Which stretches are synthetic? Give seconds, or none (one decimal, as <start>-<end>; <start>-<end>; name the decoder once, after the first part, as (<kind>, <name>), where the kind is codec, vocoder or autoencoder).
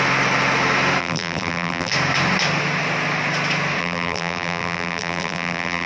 1.0-1.9 (vocoder, BigVGAN v2); 3.8-5.9